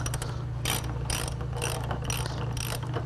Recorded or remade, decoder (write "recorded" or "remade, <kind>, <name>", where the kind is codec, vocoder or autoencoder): recorded